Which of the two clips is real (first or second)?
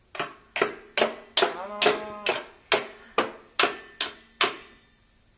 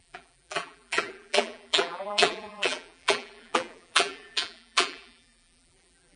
first